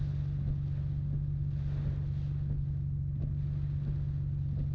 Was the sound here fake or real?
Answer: real